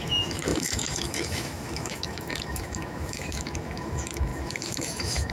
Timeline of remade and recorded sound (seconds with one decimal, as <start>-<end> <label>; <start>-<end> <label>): 0.0-5.3 remade